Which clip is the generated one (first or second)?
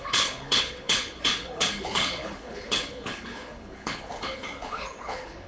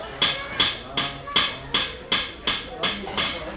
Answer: first